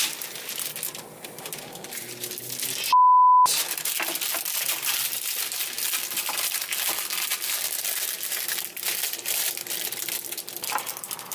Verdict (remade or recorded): recorded